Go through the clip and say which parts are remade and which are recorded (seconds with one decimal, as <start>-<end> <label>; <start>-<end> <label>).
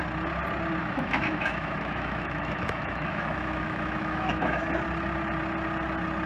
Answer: 0.0-0.8 recorded; 0.8-4.6 remade; 4.6-6.3 recorded